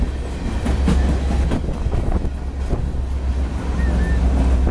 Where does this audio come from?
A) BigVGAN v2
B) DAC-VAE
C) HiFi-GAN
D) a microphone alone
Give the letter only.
D